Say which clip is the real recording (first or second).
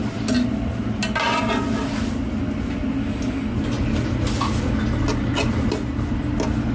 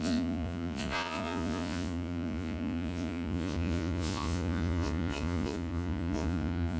first